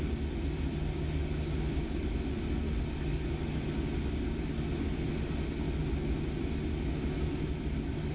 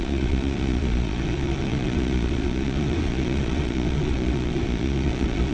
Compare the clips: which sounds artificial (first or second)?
second